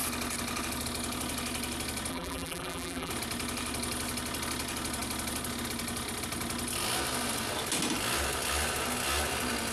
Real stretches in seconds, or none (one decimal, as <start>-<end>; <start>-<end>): 0.0-2.1; 3.1-9.7